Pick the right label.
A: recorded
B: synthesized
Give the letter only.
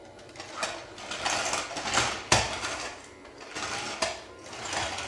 A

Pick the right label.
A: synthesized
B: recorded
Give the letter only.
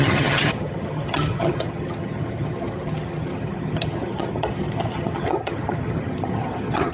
A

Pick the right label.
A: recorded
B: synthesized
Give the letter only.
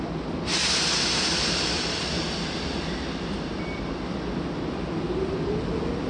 A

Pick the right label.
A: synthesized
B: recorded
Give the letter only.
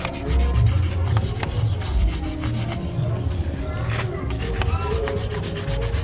B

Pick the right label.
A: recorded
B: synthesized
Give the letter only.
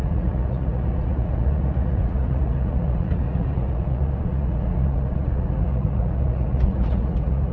B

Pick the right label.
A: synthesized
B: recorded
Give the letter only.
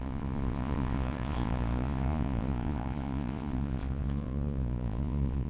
A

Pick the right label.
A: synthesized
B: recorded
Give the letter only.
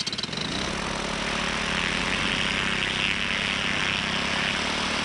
B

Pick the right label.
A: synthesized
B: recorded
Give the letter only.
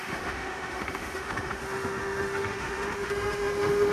A